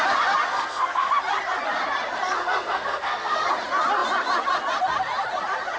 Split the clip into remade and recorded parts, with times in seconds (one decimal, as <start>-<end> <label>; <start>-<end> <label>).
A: 0.0-0.5 recorded; 0.5-1.1 remade; 1.1-2.3 recorded; 2.3-3.5 remade; 3.5-5.8 recorded